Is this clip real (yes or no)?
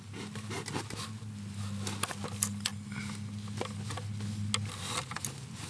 yes